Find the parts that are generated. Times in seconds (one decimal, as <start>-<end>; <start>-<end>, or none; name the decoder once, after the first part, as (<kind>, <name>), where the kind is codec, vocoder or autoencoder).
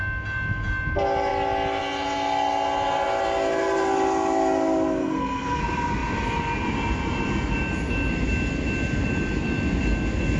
5.0-5.6 (codec, SNAC)